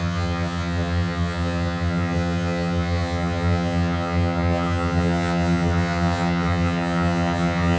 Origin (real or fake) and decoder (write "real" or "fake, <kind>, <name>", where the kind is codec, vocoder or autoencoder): fake, vocoder, HiFi-GAN